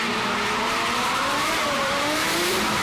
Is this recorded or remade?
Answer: remade